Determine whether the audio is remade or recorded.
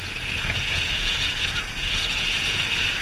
remade